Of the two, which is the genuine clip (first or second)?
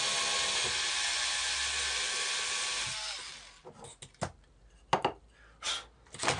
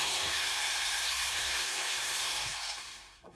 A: first